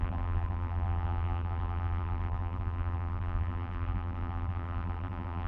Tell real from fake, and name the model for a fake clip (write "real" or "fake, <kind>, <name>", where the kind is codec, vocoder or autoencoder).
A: fake, vocoder, BigVGAN v2